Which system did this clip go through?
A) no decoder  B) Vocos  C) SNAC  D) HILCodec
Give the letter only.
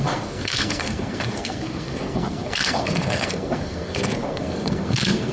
C